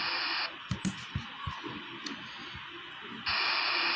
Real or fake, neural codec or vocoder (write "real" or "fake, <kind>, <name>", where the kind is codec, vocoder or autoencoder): real